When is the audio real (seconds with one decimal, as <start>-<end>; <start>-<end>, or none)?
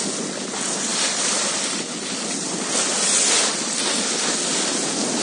0.0-5.2